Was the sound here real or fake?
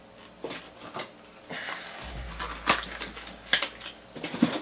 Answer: real